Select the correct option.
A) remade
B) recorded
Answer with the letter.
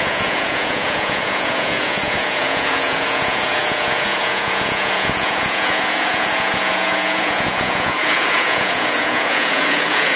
A